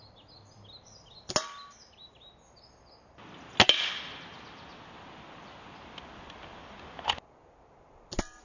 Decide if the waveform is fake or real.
real